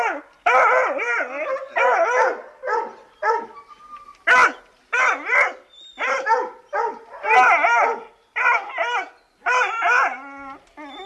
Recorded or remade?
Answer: recorded